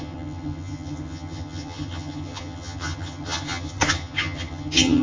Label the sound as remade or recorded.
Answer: remade